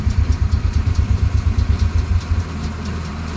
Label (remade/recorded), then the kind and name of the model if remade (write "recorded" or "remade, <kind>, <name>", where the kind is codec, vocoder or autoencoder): remade, vocoder, BigVGAN v2